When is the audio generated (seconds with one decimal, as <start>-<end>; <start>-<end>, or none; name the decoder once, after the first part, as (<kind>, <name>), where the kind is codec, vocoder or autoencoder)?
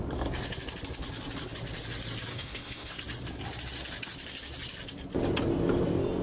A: 2.3-2.9 (codec, SNAC)